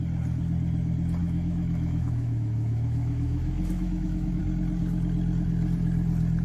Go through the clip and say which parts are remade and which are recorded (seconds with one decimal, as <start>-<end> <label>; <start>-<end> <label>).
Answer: 0.0-1.2 recorded; 1.2-4.4 remade; 4.4-6.4 recorded